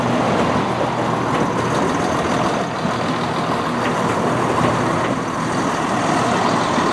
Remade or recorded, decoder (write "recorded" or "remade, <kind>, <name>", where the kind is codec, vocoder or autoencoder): recorded